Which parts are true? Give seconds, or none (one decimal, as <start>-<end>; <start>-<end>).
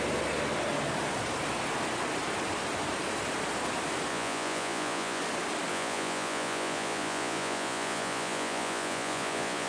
0.0-4.1; 5.2-5.7